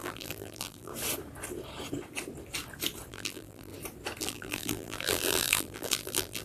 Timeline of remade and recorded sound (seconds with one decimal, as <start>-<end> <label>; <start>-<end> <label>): 0.0-0.9 remade; 0.9-3.1 recorded; 3.1-3.7 remade; 3.7-4.2 recorded; 4.2-6.4 remade